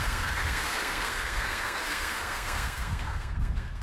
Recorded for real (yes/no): no